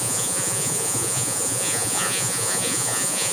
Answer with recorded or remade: remade